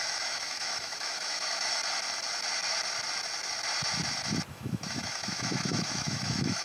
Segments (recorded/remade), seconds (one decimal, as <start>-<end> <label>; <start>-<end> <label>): 0.0-1.8 remade; 1.8-4.5 recorded; 4.5-6.6 remade